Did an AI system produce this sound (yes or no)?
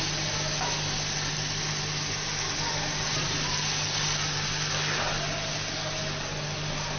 no